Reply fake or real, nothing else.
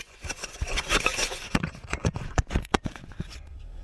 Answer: fake